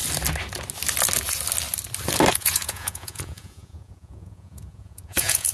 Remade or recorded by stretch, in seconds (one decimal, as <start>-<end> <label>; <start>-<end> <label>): 0.0-2.3 recorded; 2.3-5.5 remade